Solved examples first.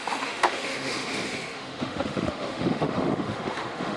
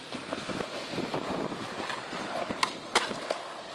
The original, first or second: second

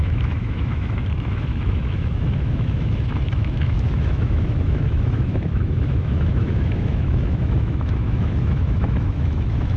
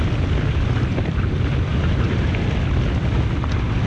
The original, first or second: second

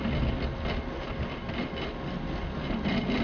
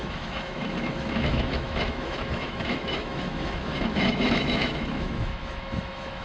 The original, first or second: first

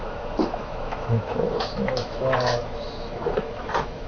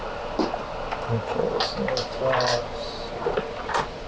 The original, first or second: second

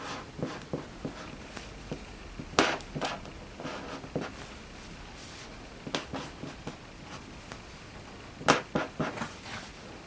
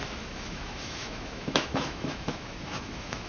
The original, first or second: first